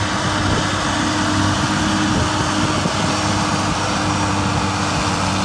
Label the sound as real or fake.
real